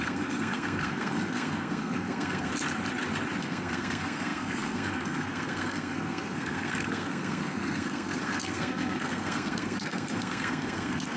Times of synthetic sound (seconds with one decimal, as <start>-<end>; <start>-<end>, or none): 0.0-2.5; 3.4-11.2